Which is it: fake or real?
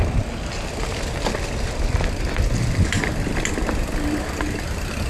real